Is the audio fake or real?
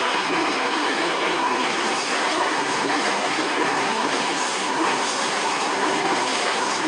fake